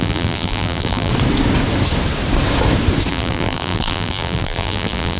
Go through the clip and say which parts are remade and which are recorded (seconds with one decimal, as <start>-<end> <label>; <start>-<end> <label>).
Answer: 0.0-1.1 remade; 1.1-3.1 recorded; 3.1-5.2 remade